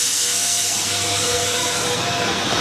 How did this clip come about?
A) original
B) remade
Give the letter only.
B